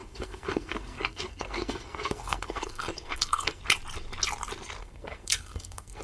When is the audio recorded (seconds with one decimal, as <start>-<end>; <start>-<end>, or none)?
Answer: 3.6-4.8